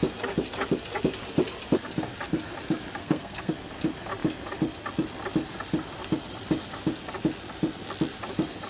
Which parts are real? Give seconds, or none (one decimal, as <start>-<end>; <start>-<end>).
0.0-3.0; 3.5-8.7